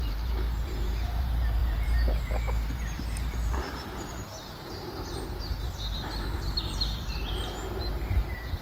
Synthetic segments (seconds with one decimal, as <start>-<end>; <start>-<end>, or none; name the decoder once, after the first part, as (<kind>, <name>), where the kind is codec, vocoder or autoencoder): 0.0-8.6 (vocoder, BigVGAN v2)